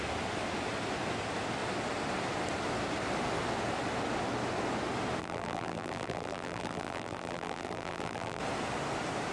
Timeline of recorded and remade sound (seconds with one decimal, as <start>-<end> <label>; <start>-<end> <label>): 0.0-5.2 recorded; 5.2-8.4 remade; 8.4-9.3 recorded